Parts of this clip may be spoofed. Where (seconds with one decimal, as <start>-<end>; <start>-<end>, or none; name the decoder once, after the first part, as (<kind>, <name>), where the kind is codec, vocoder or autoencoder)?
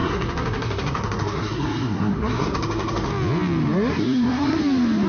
0.0-3.1 (codec, SNAC); 3.9-4.6